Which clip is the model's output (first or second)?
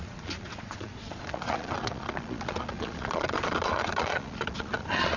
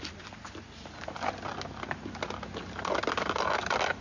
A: first